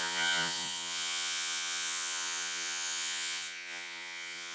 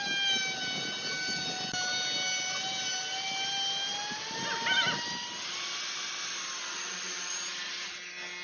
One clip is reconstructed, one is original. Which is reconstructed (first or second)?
first